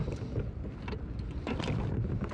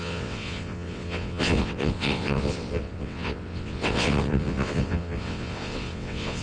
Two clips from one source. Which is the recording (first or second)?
first